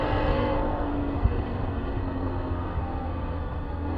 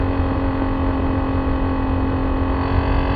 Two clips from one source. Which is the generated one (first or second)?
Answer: first